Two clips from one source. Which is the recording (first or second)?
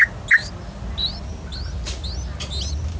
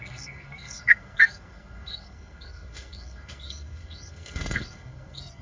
first